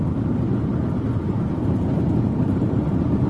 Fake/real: fake